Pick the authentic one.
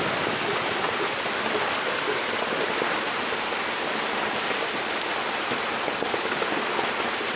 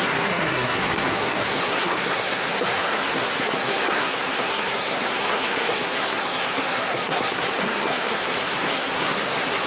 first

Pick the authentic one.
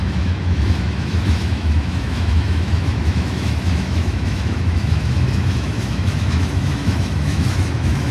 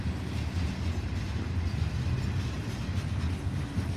second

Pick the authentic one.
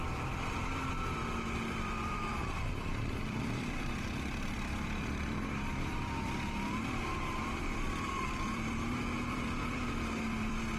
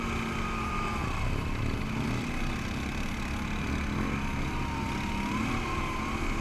second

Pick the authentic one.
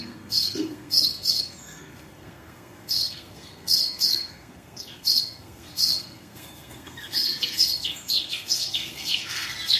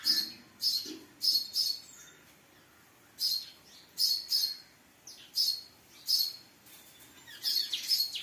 second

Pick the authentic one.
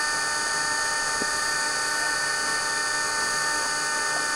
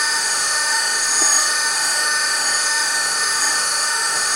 first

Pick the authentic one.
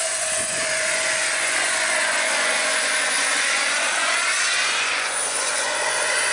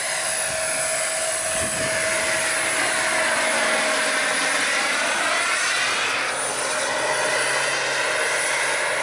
second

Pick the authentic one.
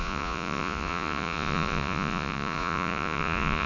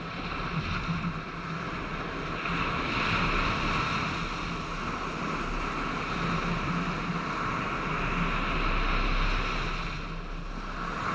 second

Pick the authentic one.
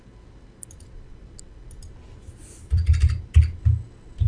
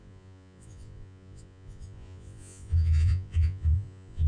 first